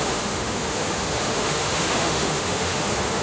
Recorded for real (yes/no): no